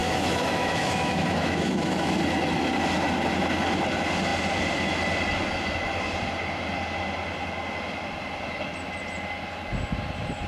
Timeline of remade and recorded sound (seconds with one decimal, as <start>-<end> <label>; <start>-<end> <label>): 0.0-2.2 remade; 2.2-10.5 recorded